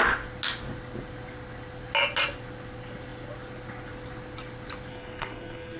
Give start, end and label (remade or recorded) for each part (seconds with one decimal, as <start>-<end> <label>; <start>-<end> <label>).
0.0-4.9 recorded; 4.9-5.8 remade